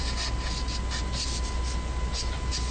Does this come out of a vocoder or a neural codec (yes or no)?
no